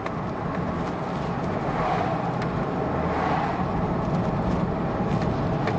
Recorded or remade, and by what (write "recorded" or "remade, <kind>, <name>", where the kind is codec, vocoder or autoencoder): recorded